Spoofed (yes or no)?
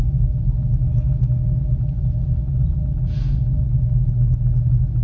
no